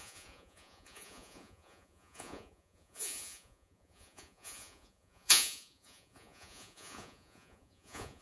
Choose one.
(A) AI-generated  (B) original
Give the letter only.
A